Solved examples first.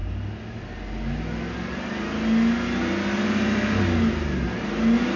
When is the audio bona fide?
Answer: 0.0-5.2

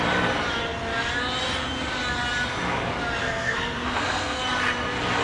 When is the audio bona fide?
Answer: 0.0-3.2; 4.4-5.2

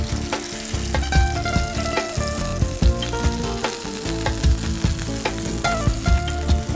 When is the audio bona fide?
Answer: 0.0-6.8

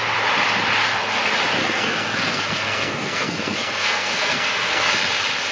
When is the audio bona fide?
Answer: 0.0-1.6; 4.9-5.5

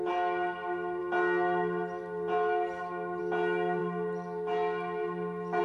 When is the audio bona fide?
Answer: 0.0-5.6

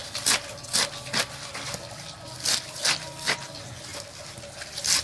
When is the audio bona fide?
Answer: 0.0-5.0

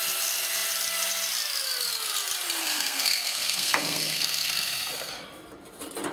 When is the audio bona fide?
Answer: 0.0-2.6; 5.1-6.1

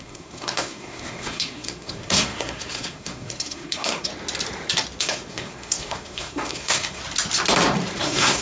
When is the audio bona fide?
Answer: 4.1-5.0; 7.0-8.0